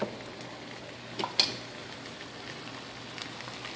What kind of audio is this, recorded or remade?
recorded